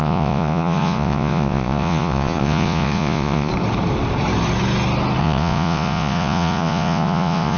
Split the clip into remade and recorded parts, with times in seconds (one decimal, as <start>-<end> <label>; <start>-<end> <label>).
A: 0.0-3.5 remade; 3.5-5.2 recorded; 5.2-7.6 remade